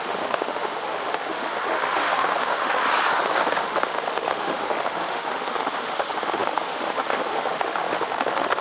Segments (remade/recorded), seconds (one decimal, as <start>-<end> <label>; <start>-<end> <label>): 0.0-2.8 remade; 2.8-3.3 recorded; 3.3-8.6 remade